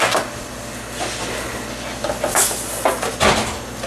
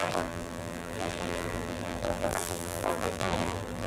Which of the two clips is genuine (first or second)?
first